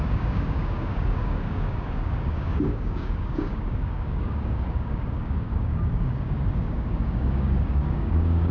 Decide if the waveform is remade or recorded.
remade